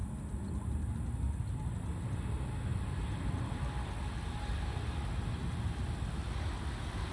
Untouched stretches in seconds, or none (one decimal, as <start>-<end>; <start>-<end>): 0.0-7.1